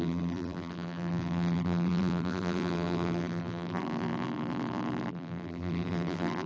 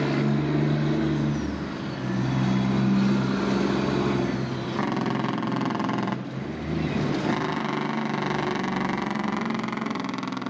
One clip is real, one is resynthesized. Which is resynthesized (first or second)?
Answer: first